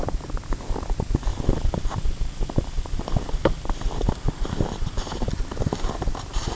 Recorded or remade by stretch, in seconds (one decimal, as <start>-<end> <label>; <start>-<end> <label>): 0.0-1.3 recorded; 1.3-5.3 remade; 5.3-6.6 recorded